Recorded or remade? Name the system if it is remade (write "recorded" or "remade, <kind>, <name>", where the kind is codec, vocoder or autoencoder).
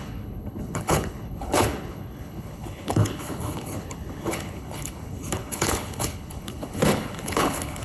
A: remade, codec, HILCodec